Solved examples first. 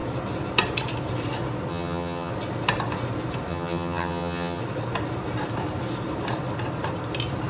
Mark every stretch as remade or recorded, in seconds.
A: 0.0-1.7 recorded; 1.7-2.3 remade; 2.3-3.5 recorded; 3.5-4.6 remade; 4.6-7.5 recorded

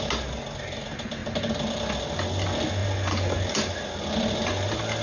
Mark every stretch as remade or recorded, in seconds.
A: 0.0-5.0 recorded

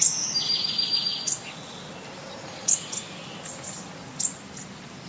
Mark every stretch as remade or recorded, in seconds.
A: 0.0-5.1 recorded